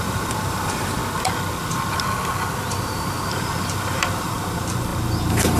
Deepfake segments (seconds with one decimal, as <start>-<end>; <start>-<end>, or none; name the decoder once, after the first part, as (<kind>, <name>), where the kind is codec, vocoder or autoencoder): 0.0-1.0 (vocoder, BigVGAN v2); 2.8-5.6